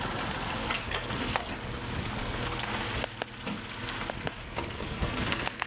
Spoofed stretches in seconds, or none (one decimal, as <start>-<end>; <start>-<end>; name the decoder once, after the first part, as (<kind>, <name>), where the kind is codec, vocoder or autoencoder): 0.6-1.5 (codec, SNAC); 2.2-2.7; 4.4-5.7